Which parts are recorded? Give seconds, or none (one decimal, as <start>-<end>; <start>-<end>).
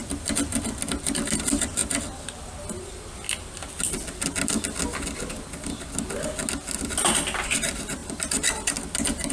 0.0-9.3